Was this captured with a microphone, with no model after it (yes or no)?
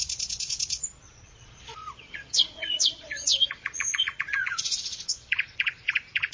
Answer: no